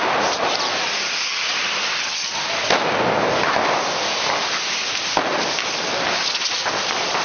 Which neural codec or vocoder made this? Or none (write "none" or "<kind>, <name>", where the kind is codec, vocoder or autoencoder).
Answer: none